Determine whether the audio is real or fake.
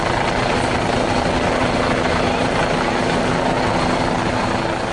real